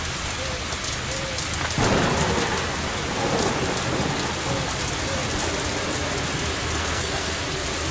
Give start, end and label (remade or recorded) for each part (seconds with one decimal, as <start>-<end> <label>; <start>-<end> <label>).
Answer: 0.0-6.8 recorded; 6.8-7.4 remade; 7.4-7.9 recorded